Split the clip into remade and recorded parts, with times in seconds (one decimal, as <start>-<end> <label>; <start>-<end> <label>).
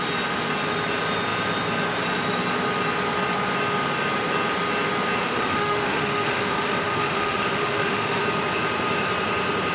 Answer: 0.0-5.2 recorded; 5.2-8.2 remade; 8.2-9.7 recorded